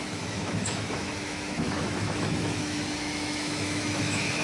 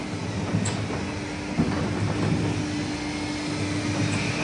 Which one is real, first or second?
second